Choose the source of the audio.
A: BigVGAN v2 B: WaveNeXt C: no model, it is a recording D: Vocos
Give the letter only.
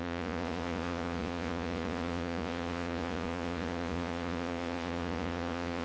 D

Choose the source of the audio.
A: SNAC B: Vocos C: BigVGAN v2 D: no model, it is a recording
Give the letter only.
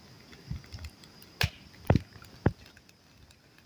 D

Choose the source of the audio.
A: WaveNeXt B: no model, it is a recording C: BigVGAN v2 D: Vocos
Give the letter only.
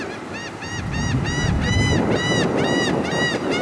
B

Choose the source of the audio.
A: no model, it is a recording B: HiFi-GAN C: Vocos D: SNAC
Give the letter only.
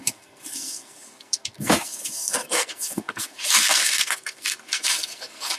D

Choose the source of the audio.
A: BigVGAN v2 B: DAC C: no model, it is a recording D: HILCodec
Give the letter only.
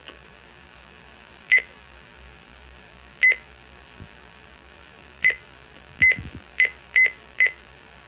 A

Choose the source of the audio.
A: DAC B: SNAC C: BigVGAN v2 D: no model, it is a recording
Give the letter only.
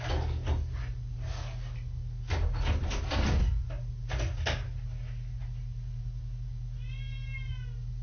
D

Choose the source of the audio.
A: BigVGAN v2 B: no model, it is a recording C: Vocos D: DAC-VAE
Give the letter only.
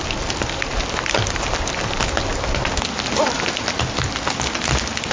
B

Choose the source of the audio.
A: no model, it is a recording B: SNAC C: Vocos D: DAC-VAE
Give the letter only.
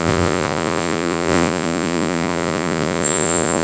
C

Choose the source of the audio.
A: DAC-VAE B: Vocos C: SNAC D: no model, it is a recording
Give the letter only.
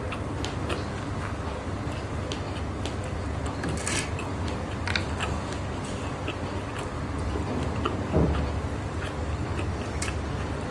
D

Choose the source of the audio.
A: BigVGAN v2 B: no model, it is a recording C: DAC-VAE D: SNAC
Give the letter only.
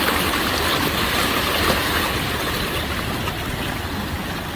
B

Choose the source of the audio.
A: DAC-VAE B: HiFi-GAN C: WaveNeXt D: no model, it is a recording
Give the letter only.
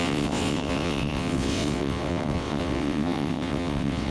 C